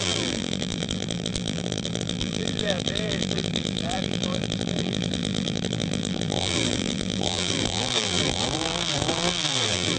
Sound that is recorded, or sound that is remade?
remade